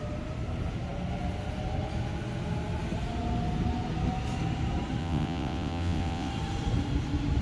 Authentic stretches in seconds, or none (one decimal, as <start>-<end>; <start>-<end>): 0.0-5.0; 6.3-7.4